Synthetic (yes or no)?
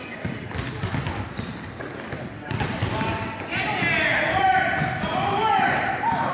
no